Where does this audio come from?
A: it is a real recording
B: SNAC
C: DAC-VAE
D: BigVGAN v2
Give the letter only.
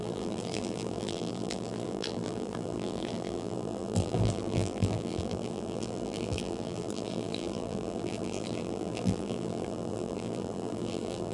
D